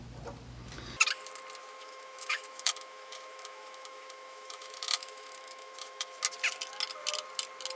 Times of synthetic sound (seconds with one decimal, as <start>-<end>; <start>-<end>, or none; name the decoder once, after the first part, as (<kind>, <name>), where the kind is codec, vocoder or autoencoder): 1.6-6.2 (autoencoder, DAC-VAE)